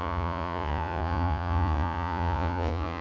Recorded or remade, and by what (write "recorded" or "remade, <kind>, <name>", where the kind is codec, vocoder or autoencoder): remade, vocoder, Vocos